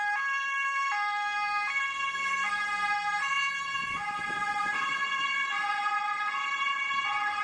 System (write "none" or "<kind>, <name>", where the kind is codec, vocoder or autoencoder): none